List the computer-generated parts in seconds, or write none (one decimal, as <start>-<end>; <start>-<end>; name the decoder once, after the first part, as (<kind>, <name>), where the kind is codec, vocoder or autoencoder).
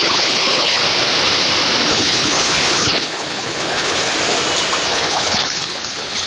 0.0-0.8 (codec, HILCodec); 1.9-4.1; 4.9-6.3